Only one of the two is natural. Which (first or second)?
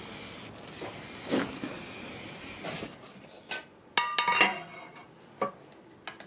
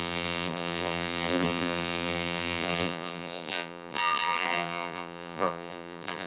first